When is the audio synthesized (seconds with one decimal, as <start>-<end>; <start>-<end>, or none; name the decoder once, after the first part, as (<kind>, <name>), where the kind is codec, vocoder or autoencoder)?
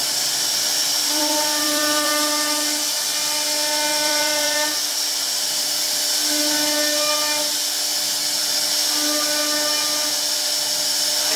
0.0-2.1 (vocoder, BigVGAN v2); 3.9-5.7